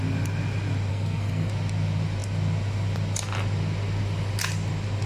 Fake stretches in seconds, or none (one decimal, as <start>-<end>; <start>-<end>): 0.9-1.5